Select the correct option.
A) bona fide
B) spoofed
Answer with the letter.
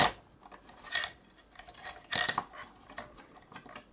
A